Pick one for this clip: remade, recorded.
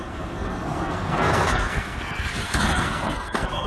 remade